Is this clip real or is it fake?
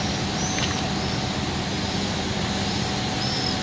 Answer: real